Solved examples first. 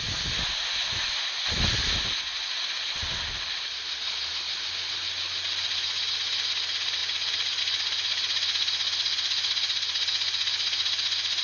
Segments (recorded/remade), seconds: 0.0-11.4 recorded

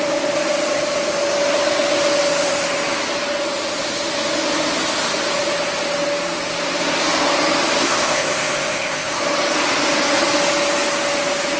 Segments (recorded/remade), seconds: 0.0-7.8 recorded; 7.8-9.2 remade; 9.2-11.6 recorded